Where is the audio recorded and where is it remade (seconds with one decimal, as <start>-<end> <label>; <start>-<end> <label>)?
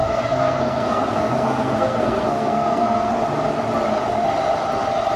0.0-3.1 remade; 3.1-5.2 recorded